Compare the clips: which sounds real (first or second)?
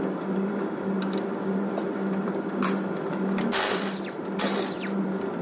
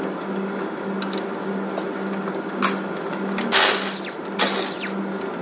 second